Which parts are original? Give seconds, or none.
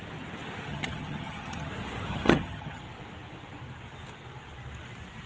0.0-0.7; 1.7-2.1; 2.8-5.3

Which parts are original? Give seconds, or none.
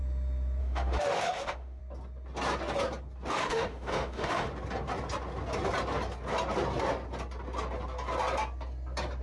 0.0-0.6; 1.8-3.3; 4.5-9.2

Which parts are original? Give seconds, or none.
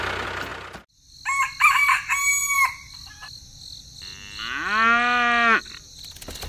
0.0-2.4; 3.1-6.5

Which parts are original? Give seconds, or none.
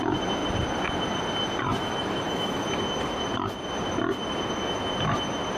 0.0-1.7; 2.6-5.6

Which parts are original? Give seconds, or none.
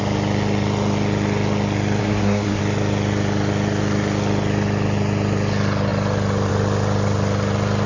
0.0-2.0; 2.6-7.9